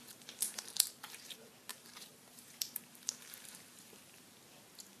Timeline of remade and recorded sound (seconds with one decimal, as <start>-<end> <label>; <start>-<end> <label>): 0.0-1.1 remade; 1.1-1.7 recorded; 1.7-4.3 remade; 4.3-5.0 recorded